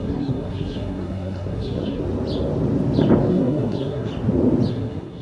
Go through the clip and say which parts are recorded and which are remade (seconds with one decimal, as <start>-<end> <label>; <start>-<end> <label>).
0.0-2.0 remade; 2.0-3.3 recorded; 3.3-4.1 remade; 4.1-4.7 recorded; 4.7-5.2 remade

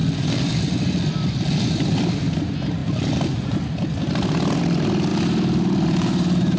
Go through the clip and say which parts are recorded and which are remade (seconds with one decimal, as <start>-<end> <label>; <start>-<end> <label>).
0.0-2.4 remade; 2.4-5.1 recorded; 5.1-6.6 remade

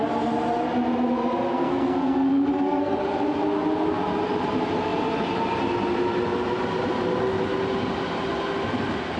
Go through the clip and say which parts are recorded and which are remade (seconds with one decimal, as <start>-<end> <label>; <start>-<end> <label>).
0.0-1.5 recorded; 1.5-3.0 remade; 3.0-9.2 recorded

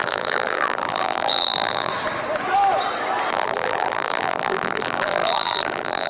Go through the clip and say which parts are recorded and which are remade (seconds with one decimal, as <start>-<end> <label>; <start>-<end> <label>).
0.0-1.9 remade; 1.9-3.3 recorded; 3.3-6.1 remade

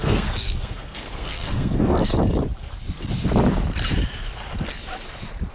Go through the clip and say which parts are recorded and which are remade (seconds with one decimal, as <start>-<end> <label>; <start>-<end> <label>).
0.0-2.1 remade; 2.1-5.5 recorded